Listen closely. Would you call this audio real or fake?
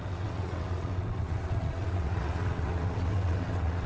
fake